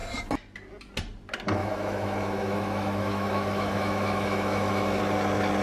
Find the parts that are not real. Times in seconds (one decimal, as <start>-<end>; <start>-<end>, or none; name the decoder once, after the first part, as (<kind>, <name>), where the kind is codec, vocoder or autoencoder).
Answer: 1.6-5.0 (autoencoder, DAC-VAE)